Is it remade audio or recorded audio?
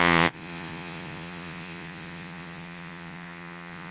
remade